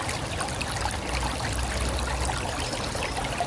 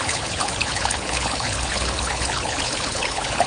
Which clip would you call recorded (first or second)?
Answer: first